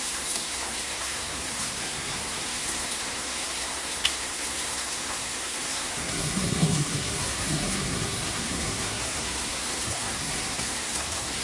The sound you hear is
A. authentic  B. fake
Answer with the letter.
B